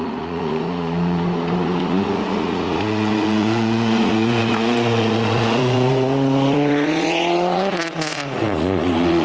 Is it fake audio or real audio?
fake